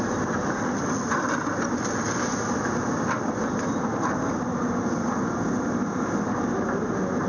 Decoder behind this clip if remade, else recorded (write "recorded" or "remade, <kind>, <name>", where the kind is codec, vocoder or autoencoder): recorded